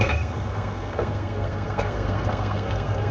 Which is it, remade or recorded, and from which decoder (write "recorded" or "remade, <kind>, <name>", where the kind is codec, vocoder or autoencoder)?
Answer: remade, codec, SNAC